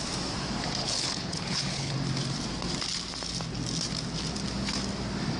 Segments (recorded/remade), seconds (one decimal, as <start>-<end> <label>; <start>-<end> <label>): 0.0-0.8 recorded; 0.8-1.9 remade; 1.9-5.4 recorded